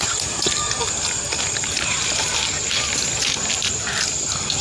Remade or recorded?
recorded